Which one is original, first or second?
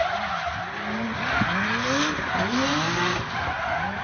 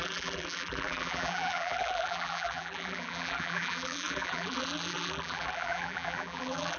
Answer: first